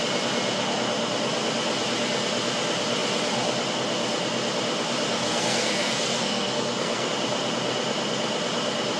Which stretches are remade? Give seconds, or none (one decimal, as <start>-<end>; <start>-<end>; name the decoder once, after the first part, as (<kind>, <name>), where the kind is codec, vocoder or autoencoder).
5.2-7.1 (codec, SNAC)